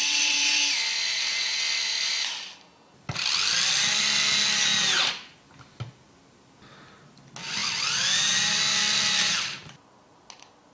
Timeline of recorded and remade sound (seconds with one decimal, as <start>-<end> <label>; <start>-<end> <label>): 0.0-0.6 remade; 0.6-1.1 recorded; 1.1-1.6 remade; 1.6-10.7 recorded